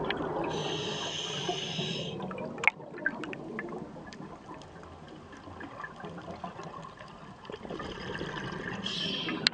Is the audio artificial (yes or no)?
no